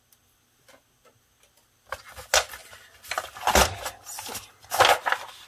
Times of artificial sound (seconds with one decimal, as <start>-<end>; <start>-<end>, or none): 2.6-4.8